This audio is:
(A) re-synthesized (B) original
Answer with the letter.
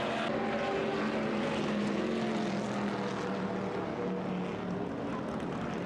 B